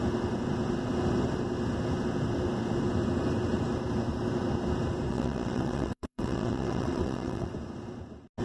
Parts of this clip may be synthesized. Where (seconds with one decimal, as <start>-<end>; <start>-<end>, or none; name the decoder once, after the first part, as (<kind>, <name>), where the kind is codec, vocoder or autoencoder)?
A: 5.1-7.5 (vocoder, WaveNeXt)